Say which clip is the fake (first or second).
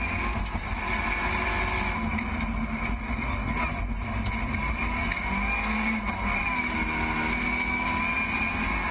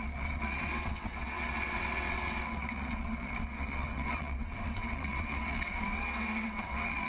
second